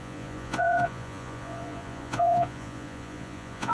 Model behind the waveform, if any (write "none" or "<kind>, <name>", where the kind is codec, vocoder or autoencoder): vocoder, Vocos